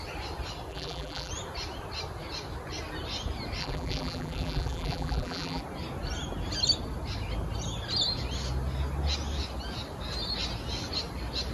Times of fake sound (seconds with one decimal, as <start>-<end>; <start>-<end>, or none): 0.7-1.3; 3.6-5.6